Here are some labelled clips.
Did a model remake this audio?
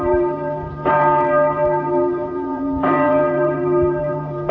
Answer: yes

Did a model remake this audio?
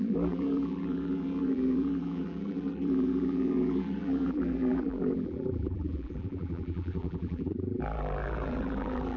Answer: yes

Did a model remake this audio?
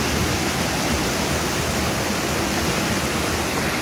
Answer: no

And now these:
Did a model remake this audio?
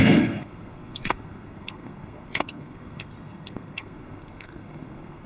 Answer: yes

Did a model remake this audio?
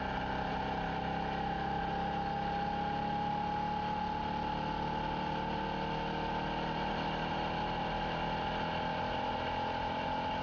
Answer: no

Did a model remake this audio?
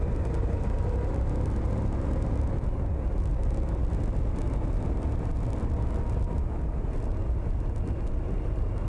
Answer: no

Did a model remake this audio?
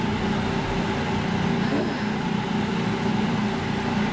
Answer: no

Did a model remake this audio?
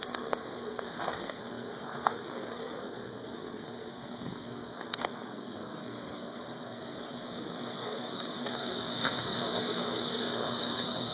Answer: yes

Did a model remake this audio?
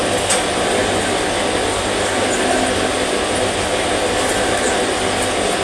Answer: no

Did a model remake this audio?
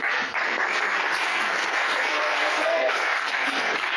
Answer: yes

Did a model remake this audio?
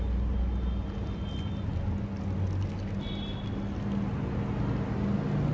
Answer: no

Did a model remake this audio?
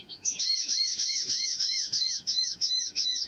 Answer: yes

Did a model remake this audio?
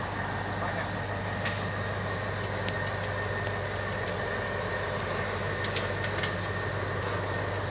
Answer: no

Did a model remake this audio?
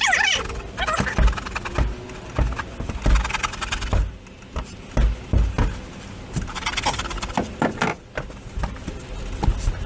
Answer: no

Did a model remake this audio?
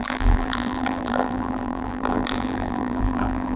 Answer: yes